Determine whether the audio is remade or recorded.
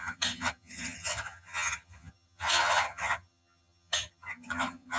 remade